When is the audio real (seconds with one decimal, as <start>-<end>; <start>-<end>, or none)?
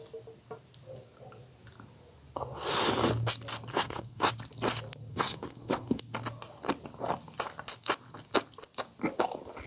0.0-3.7; 4.3-5.1; 6.0-9.7